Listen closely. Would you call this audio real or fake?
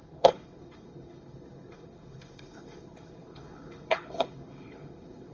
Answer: fake